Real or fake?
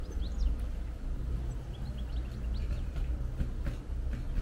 real